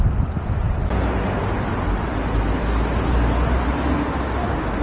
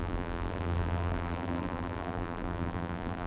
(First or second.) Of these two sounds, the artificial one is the second